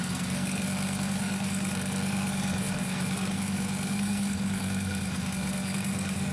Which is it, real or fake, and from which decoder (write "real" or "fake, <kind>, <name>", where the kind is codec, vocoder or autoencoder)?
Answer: fake, codec, SNAC